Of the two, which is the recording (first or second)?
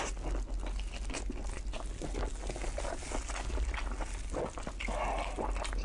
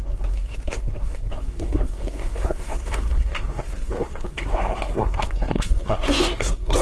first